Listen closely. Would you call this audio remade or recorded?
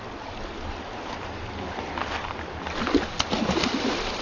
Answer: recorded